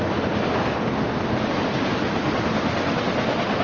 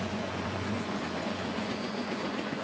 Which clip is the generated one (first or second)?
second